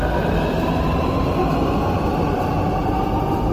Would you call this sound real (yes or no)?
yes